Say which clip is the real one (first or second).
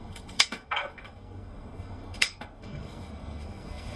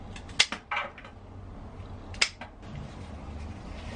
second